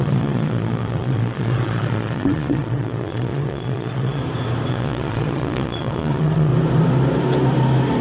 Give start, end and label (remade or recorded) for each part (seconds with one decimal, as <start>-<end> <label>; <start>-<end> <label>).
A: 0.0-4.2 remade; 4.2-4.7 recorded; 4.7-6.5 remade; 6.5-8.0 recorded